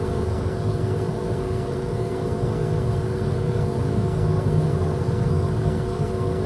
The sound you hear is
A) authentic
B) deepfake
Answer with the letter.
B